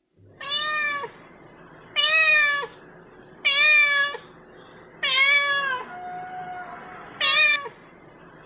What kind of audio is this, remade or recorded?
recorded